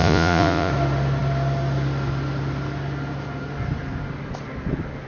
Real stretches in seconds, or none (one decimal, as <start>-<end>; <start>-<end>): 0.7-5.1